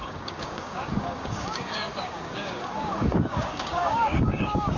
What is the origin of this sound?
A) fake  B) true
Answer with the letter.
A